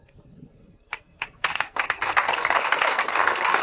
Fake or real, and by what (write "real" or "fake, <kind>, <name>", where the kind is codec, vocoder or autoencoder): fake, codec, SNAC